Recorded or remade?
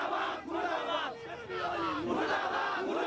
recorded